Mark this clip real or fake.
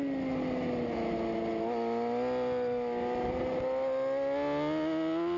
real